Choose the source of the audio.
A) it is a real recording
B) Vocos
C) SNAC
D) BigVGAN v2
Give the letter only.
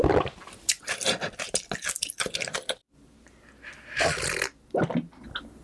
A